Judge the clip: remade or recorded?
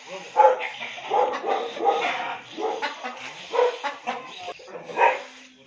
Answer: remade